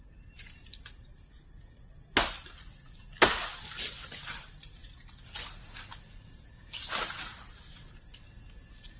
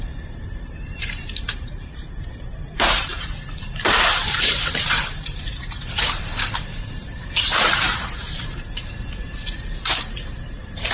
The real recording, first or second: first